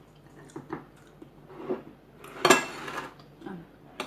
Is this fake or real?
real